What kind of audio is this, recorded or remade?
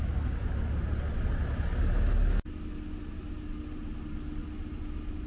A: recorded